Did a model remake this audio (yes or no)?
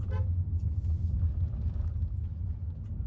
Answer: no